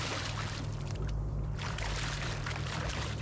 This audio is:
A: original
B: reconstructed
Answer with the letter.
B